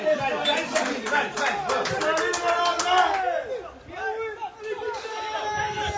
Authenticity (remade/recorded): recorded